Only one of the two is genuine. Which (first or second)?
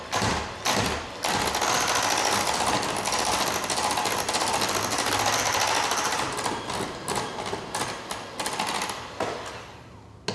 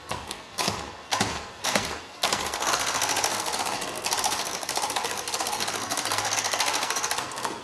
first